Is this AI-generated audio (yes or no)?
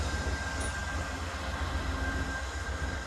no